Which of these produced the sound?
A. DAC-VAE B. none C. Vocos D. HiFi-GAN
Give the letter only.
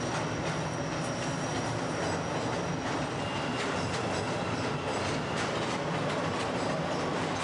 B